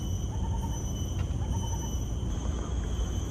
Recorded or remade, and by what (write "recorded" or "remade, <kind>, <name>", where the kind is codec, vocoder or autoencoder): recorded